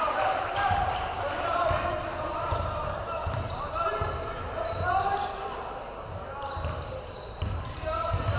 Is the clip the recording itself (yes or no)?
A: no